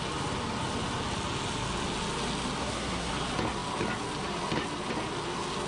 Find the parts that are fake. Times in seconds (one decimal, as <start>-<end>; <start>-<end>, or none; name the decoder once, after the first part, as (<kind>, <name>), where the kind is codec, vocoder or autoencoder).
2.6-3.1 (codec, SNAC)